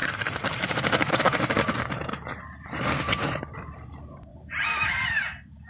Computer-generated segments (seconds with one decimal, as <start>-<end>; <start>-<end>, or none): 0.0-3.4; 4.3-5.7